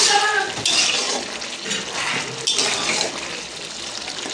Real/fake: real